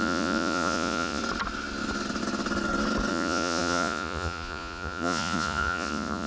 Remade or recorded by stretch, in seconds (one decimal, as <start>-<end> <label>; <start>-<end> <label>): 0.0-1.2 remade; 1.2-3.1 recorded; 3.1-6.3 remade